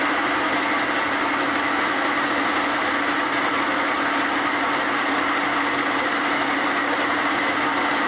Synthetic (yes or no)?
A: no